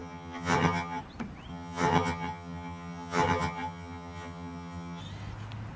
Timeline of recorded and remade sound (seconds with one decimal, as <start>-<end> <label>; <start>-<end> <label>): 0.0-1.0 remade; 1.0-1.5 recorded; 1.5-5.0 remade; 5.0-5.8 recorded